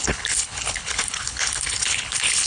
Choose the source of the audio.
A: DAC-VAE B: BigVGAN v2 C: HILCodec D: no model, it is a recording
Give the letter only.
C